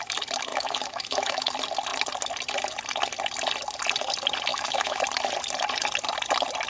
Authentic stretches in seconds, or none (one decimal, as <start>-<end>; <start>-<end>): 0.0-0.5; 1.5-4.5; 5.0-6.7